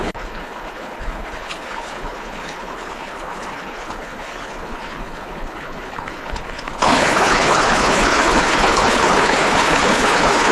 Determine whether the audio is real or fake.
fake